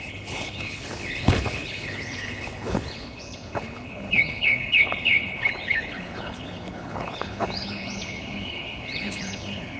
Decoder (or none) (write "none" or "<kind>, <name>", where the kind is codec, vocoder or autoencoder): codec, HILCodec